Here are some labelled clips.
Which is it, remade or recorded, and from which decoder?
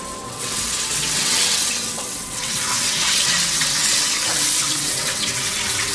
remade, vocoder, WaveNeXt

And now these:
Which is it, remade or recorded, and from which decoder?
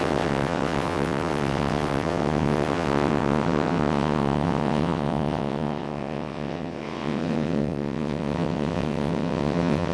remade, vocoder, WaveNeXt